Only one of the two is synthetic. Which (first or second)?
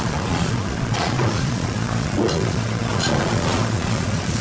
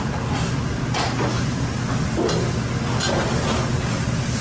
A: first